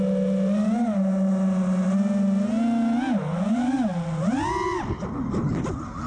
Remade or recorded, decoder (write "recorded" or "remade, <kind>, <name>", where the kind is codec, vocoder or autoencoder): recorded